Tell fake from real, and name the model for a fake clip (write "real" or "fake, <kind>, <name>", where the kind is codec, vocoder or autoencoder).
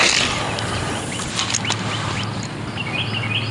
real